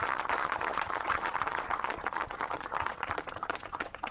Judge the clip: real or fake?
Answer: fake